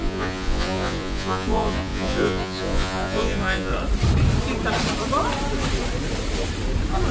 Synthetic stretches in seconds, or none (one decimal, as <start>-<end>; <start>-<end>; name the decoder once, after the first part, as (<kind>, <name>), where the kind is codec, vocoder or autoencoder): 0.0-3.7 (vocoder, Vocos)